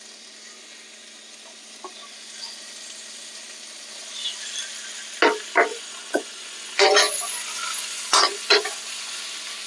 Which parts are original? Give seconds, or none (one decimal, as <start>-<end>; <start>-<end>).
0.0-5.7; 9.2-9.7